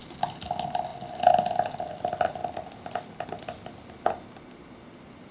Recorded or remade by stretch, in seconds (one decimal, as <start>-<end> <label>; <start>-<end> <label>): 0.0-5.3 recorded

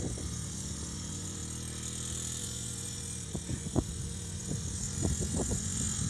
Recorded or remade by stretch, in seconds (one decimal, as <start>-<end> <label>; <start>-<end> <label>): 0.0-1.4 remade; 1.4-2.4 recorded; 2.4-6.1 remade

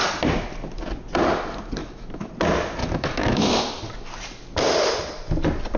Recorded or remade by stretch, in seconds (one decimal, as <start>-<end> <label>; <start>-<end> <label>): 0.0-1.8 recorded; 1.8-2.3 remade; 2.3-2.8 recorded; 2.8-3.6 remade; 3.6-5.8 recorded

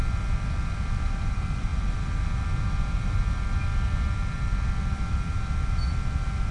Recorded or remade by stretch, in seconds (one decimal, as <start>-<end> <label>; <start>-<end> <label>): 0.0-6.5 recorded

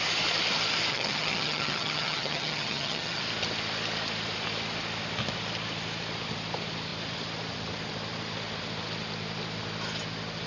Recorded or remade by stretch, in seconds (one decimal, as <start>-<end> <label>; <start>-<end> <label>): 0.0-0.9 recorded; 0.9-3.2 remade; 3.2-10.5 recorded

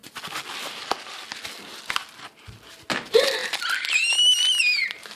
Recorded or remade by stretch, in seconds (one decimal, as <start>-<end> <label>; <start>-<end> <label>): 0.0-5.2 recorded

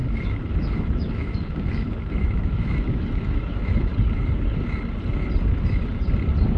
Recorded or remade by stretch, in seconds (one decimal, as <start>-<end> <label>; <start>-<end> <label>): 0.0-3.9 remade; 3.9-6.6 recorded

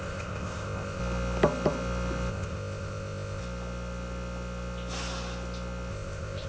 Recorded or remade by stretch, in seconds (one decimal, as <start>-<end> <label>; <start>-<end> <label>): 0.0-1.0 remade; 1.0-2.3 recorded; 2.3-3.4 remade; 3.4-5.9 recorded; 5.9-6.5 remade